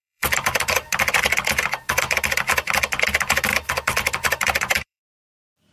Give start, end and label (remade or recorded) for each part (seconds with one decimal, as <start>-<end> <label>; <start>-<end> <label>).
0.0-1.0 remade; 1.0-3.5 recorded; 3.5-5.0 remade; 5.0-5.7 recorded